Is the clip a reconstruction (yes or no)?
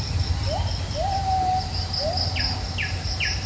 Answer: no